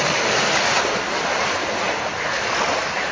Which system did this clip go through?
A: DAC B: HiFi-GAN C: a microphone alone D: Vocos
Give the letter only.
C